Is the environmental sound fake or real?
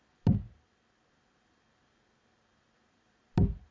real